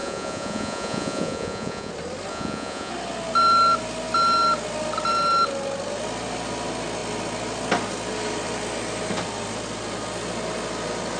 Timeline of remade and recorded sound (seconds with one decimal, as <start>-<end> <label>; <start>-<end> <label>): 0.0-1.9 remade; 1.9-2.3 recorded; 2.3-2.9 remade; 2.9-11.2 recorded